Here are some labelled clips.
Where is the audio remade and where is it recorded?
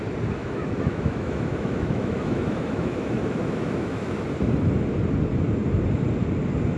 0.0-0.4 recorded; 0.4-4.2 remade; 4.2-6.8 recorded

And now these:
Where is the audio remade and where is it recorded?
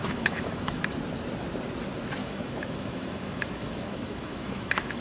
0.0-0.8 remade; 0.8-2.2 recorded; 2.2-5.0 remade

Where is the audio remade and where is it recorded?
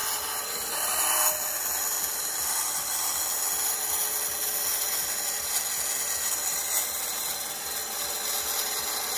0.0-9.2 recorded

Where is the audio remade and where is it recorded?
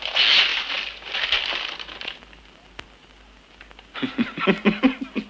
0.0-5.3 recorded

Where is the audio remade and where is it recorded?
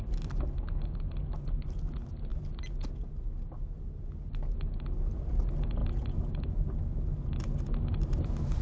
0.0-8.6 recorded